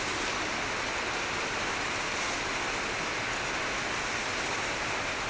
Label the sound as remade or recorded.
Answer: recorded